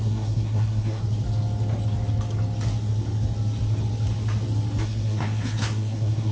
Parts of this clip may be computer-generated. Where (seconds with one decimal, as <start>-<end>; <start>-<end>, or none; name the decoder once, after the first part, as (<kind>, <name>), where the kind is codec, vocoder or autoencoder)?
0.0-1.0 (codec, SNAC); 4.8-6.3